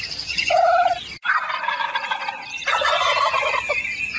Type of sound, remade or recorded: recorded